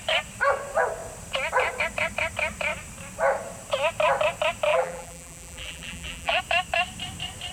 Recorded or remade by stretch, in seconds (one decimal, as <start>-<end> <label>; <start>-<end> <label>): 0.0-4.7 recorded; 4.7-6.4 remade; 6.4-7.5 recorded